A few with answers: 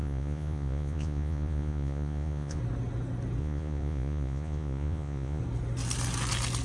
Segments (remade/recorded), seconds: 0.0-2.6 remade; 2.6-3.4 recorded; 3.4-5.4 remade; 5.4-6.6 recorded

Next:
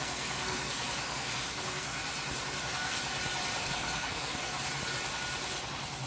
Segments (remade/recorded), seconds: 0.0-2.0 remade; 2.0-2.6 recorded; 2.6-3.0 remade; 3.0-3.6 recorded; 3.6-4.5 remade; 4.5-6.1 recorded

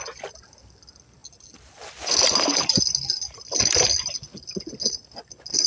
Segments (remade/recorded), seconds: 0.0-5.7 recorded

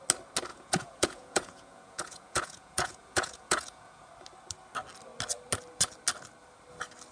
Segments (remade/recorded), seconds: 0.0-0.5 recorded; 0.5-4.1 remade; 4.1-7.1 recorded

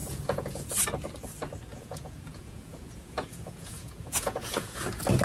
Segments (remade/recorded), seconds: 0.0-0.7 remade; 0.7-1.7 recorded; 1.7-4.8 remade; 4.8-5.2 recorded

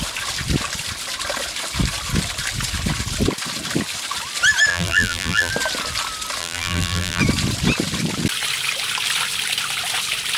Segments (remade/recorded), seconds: 0.0-4.7 recorded; 4.7-5.5 remade; 5.5-6.4 recorded; 6.4-7.2 remade; 7.2-10.4 recorded

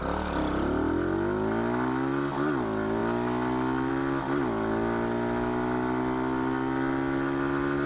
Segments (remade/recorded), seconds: 0.0-7.9 recorded